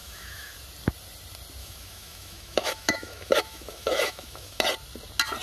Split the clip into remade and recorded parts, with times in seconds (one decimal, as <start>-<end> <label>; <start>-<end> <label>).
0.0-0.6 remade; 0.6-1.6 recorded; 1.6-4.6 remade; 4.6-5.4 recorded

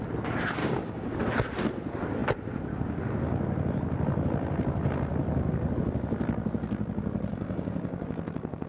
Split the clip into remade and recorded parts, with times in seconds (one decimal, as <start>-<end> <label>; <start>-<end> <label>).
0.0-0.6 recorded; 0.6-1.2 remade; 1.2-7.3 recorded; 7.3-8.0 remade; 8.0-8.7 recorded

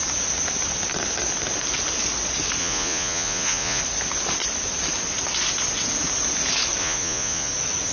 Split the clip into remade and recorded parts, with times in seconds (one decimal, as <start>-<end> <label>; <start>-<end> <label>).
0.0-2.6 recorded; 2.6-3.8 remade; 3.8-6.8 recorded; 6.8-7.5 remade; 7.5-7.9 recorded

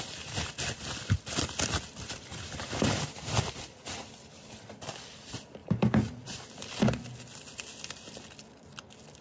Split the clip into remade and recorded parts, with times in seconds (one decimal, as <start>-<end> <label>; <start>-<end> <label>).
0.0-2.3 recorded; 2.3-3.6 remade; 3.6-5.6 recorded; 5.6-6.6 remade; 6.6-9.2 recorded

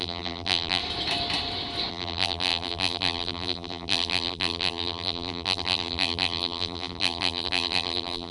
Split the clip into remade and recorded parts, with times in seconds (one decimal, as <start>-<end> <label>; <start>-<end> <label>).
0.0-0.8 remade; 0.8-1.9 recorded; 1.9-8.3 remade

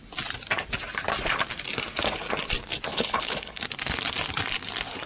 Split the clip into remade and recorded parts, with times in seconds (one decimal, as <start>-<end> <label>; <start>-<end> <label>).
0.0-2.9 recorded; 2.9-3.6 remade; 3.6-5.1 recorded